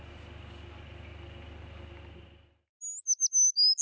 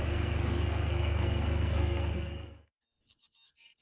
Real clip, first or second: first